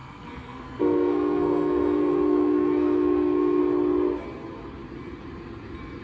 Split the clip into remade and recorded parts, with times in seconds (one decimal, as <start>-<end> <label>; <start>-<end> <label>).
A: 0.0-3.6 remade; 3.6-6.0 recorded